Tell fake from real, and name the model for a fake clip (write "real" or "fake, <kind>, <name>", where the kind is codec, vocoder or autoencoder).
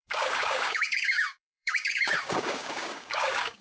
fake, codec, DAC